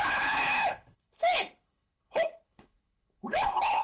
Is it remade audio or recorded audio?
remade